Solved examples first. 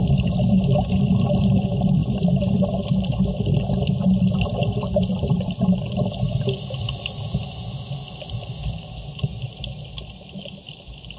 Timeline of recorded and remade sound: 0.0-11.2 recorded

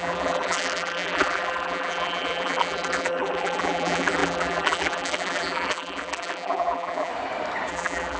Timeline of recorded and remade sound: 0.0-7.1 remade; 7.1-7.7 recorded; 7.7-8.2 remade

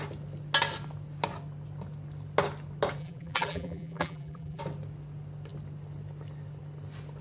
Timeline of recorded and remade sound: 0.0-3.0 recorded; 3.0-4.6 remade; 4.6-7.2 recorded

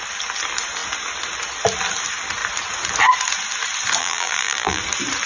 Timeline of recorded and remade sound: 0.0-4.0 recorded; 4.0-4.8 remade; 4.8-5.3 recorded

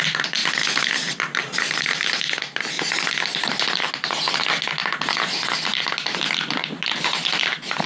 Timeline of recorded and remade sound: 0.0-0.4 recorded; 0.4-3.9 remade; 3.9-4.8 recorded; 4.8-5.9 remade; 5.9-7.9 recorded

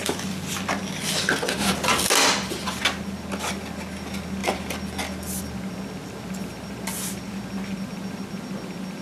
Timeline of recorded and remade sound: 0.0-9.0 recorded

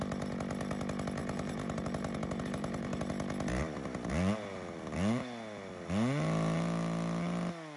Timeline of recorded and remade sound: 0.0-1.2 recorded; 1.2-3.1 remade; 3.1-7.8 recorded